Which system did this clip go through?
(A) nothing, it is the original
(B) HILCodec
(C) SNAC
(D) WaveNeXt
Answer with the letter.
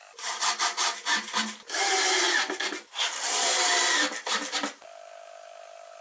A